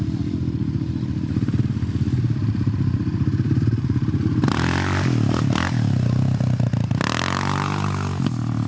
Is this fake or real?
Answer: real